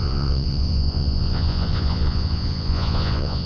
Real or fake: fake